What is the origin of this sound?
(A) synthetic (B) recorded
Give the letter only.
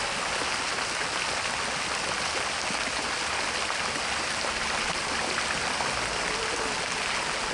B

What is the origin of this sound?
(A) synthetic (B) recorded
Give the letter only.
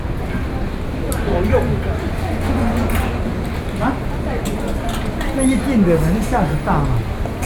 B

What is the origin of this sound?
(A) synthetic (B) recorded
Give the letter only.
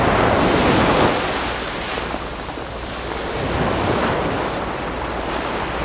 B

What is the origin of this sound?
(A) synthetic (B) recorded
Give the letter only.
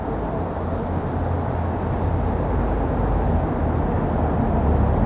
B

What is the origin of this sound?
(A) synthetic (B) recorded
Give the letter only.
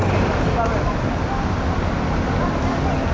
B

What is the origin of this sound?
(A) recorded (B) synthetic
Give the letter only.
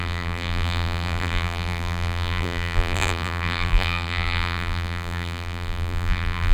B